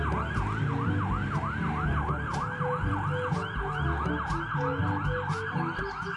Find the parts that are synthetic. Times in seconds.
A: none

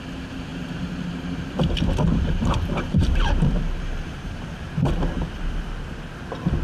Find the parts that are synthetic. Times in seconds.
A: 0.5-4.5

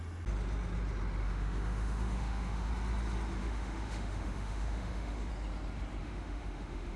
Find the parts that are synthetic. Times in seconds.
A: 1.2-2.7; 3.4-5.3; 6.0-7.0

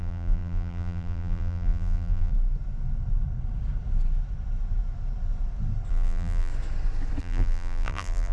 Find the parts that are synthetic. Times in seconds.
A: 0.0-2.3; 5.9-6.5; 7.2-8.3

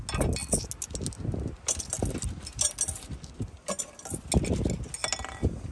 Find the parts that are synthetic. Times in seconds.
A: none

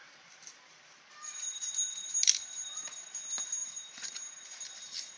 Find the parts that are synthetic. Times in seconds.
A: 0.0-3.1; 3.6-4.1

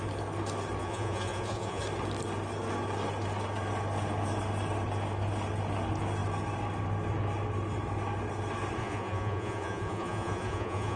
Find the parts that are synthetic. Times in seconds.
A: 0.8-1.8; 8.8-11.0

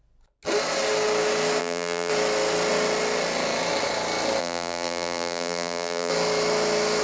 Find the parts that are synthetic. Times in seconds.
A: 1.6-2.1; 4.4-6.1